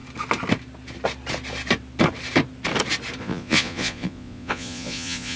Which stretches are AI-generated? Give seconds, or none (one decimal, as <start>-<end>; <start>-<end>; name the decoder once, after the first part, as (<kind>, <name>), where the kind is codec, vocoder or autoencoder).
3.2-5.4 (vocoder, Vocos)